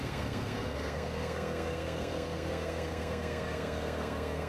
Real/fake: fake